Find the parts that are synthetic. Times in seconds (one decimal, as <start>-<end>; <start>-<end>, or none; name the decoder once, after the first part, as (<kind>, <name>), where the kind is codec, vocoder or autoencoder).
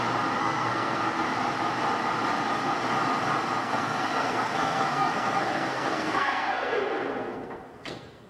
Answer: 0.4-1.0 (codec, SNAC); 3.6-8.3